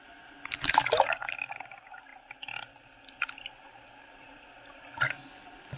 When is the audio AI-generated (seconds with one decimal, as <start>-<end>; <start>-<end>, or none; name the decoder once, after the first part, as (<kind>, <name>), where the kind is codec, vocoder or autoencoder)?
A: none